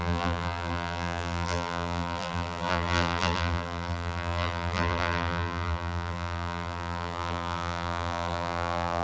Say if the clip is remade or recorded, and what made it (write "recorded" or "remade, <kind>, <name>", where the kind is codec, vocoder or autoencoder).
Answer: remade, vocoder, BigVGAN v2